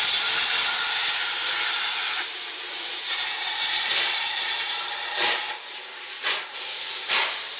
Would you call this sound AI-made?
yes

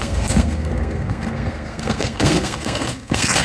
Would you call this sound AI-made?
yes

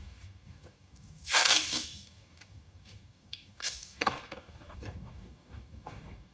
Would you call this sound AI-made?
yes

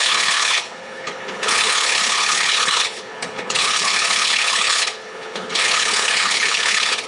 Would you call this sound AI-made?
yes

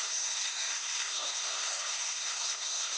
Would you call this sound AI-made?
yes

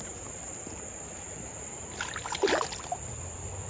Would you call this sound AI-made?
no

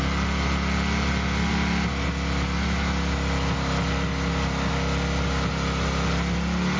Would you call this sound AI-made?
no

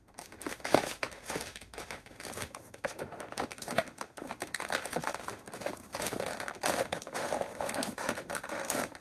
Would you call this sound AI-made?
yes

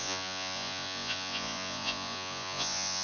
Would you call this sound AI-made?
yes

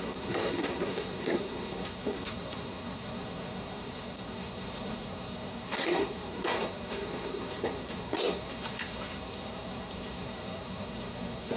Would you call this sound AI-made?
yes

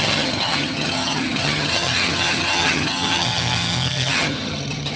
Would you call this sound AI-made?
yes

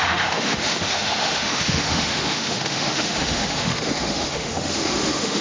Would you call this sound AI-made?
yes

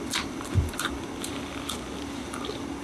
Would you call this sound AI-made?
no